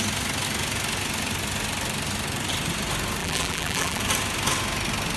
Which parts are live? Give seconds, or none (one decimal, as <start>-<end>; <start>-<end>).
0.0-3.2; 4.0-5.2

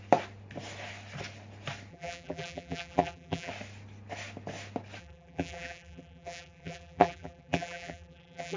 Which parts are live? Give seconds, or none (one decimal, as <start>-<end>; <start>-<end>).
0.0-1.9; 3.5-5.0

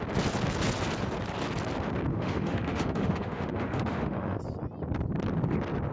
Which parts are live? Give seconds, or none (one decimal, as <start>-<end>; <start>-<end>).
0.0-2.1; 4.4-5.9